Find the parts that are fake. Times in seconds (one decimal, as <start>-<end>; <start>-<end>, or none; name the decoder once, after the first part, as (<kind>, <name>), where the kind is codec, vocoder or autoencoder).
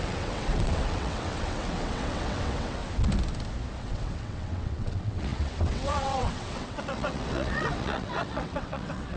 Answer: 0.0-2.8 (vocoder, WaveNeXt); 3.8-9.2